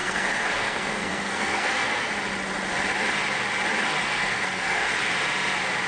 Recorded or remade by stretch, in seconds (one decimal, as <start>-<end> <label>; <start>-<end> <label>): 0.0-2.1 remade; 2.1-4.0 recorded; 4.0-5.0 remade; 5.0-5.9 recorded